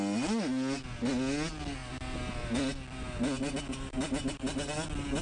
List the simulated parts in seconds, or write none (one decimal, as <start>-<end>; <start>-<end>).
none